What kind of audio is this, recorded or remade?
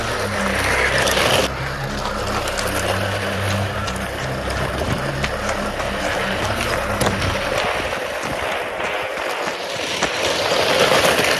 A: recorded